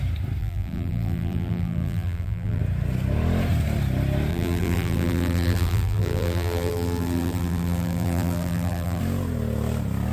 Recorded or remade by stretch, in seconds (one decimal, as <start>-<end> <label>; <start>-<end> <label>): 0.0-0.4 recorded; 0.4-2.6 remade; 2.6-4.3 recorded; 4.3-9.0 remade; 9.0-10.1 recorded